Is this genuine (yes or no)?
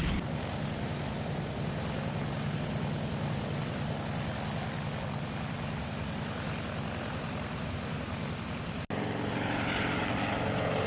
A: yes